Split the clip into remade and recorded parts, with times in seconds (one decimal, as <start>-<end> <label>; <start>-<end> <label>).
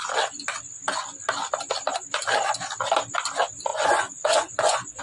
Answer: 0.0-3.7 recorded; 3.7-5.0 remade